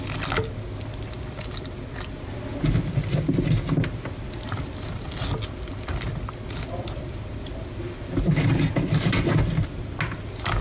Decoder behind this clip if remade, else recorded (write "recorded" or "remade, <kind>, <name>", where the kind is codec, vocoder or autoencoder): recorded